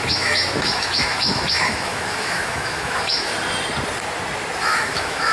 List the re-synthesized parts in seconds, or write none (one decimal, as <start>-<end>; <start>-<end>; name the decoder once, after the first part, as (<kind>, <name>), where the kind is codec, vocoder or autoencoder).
0.0-3.3 (autoencoder, DAC-VAE); 4.6-5.3